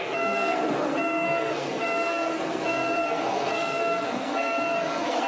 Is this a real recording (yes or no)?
no